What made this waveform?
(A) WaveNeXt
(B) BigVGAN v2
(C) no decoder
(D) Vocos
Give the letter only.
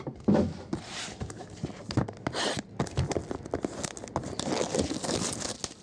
C